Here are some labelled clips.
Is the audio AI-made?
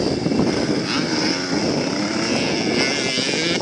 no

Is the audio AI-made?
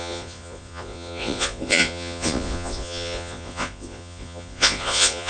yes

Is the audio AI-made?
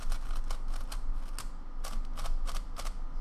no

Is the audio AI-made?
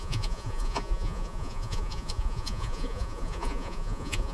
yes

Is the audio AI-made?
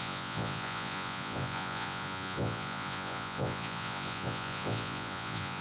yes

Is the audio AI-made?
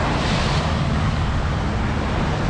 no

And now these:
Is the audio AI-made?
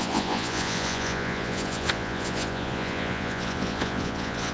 yes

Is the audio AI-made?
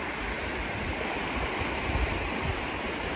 no